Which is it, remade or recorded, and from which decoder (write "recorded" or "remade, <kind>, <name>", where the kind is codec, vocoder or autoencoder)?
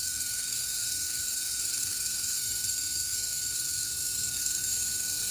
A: remade, codec, SNAC